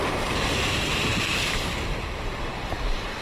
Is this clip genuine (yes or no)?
no